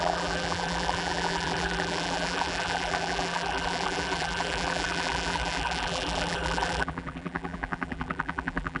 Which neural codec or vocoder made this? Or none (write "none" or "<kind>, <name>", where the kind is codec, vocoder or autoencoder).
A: vocoder, BigVGAN v2